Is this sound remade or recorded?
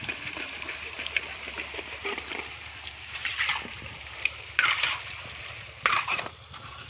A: remade